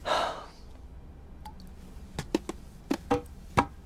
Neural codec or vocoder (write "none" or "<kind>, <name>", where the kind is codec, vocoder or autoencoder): none